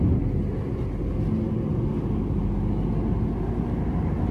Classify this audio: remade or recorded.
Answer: recorded